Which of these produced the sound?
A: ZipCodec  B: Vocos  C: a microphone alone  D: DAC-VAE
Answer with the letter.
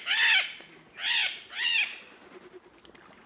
C